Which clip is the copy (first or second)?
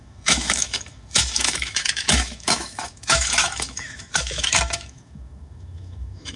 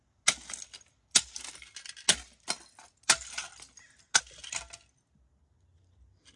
first